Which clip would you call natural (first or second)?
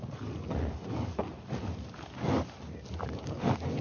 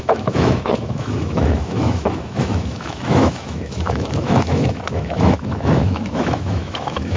first